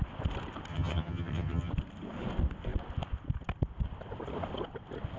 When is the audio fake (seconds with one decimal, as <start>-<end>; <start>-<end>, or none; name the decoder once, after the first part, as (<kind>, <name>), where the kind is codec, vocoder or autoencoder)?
0.7-1.7 (vocoder, HiFi-GAN)